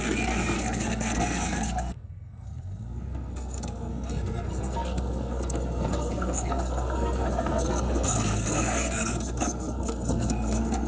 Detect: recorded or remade remade